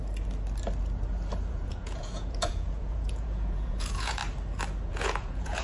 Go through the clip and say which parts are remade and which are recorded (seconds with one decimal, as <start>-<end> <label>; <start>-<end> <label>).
0.0-1.5 recorded; 1.5-4.2 remade; 4.2-4.9 recorded; 4.9-5.6 remade